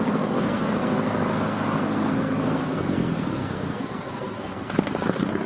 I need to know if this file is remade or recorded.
remade